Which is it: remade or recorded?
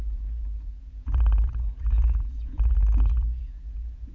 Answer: remade